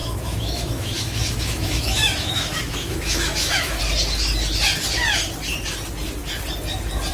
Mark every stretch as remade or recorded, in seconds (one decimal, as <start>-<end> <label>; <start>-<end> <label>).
0.0-3.8 remade; 3.8-7.1 recorded